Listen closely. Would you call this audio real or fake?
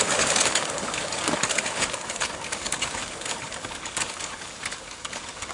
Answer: fake